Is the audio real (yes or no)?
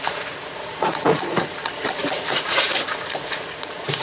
no